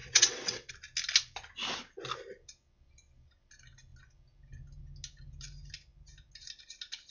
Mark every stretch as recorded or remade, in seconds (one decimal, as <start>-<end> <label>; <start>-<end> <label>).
0.0-0.7 remade; 0.7-7.1 recorded